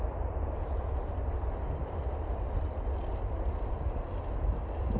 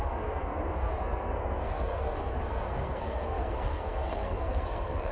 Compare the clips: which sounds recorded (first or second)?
first